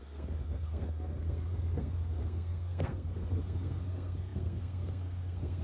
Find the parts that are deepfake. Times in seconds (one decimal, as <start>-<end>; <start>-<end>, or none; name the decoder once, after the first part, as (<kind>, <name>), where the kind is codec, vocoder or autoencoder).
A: 0.0-5.6 (codec, SNAC)